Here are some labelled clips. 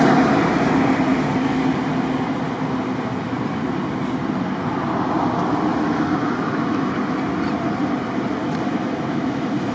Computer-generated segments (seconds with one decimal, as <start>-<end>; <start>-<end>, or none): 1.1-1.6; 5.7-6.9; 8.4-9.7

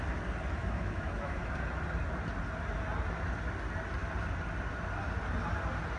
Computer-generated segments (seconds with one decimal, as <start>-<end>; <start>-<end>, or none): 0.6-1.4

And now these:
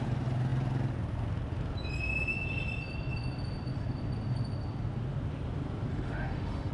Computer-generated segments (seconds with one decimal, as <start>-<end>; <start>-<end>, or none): 5.9-6.7

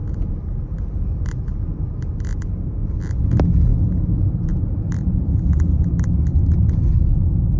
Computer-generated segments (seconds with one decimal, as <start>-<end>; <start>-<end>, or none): none

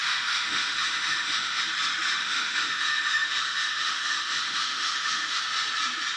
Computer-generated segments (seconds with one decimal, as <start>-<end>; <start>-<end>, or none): 0.0-1.6; 2.2-5.4

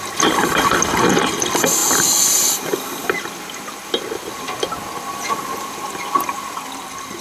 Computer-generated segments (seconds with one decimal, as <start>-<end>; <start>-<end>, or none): none

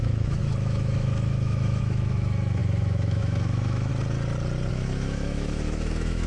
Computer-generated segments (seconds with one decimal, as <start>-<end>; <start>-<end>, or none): 0.0-3.9; 4.7-6.3